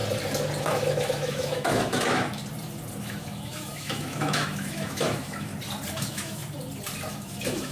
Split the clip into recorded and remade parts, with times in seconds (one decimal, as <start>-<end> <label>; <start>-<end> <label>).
0.0-0.6 recorded; 0.6-2.4 remade; 2.4-3.0 recorded; 3.0-5.5 remade; 5.5-6.0 recorded; 6.0-6.4 remade; 6.4-7.1 recorded; 7.1-7.7 remade